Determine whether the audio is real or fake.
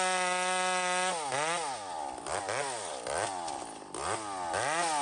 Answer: real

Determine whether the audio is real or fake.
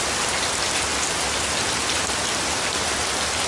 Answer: fake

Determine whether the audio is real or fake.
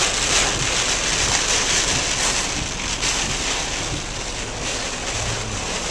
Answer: real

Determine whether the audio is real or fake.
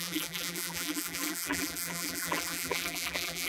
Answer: fake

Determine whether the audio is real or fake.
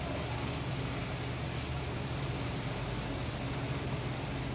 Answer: real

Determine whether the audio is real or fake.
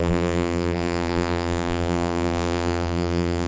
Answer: fake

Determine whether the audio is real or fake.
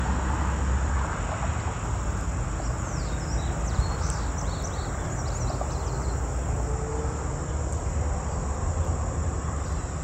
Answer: real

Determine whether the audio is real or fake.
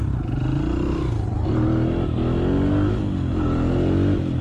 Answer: real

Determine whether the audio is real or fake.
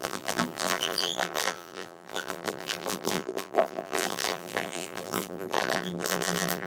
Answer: fake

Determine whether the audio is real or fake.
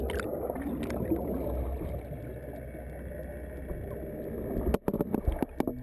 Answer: real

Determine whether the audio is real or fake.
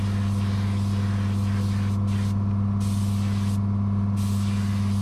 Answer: real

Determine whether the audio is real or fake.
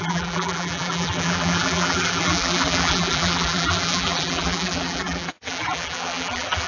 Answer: fake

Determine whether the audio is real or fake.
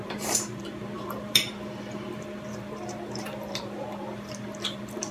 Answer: fake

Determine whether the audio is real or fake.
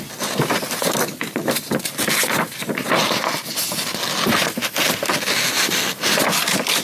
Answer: real